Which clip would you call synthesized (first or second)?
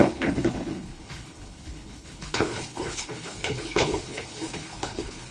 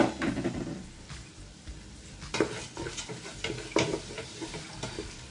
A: first